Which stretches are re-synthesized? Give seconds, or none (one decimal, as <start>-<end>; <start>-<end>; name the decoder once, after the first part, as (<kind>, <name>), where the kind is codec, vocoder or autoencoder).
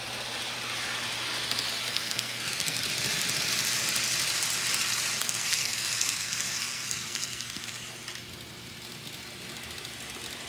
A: 1.9-2.8 (codec, SNAC); 5.2-7.7